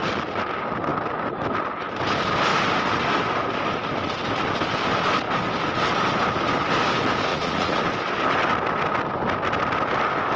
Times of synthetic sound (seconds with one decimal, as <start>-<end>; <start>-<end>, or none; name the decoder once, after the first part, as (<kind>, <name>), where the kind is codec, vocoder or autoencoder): 7.3-7.8 (vocoder, Vocos)